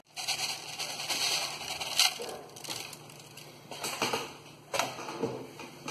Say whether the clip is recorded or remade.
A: recorded